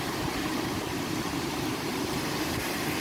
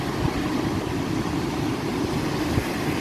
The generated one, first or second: first